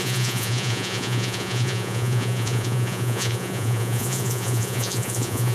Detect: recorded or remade remade